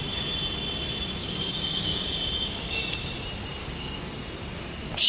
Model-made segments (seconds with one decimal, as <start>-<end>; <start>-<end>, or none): 1.2-2.8; 3.6-4.1